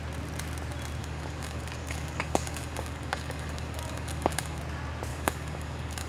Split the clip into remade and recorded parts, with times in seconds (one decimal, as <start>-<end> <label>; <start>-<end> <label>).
0.0-1.0 recorded; 1.0-4.6 remade; 4.6-5.1 recorded; 5.1-6.1 remade